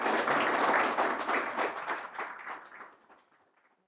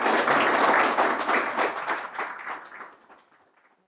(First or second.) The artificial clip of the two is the first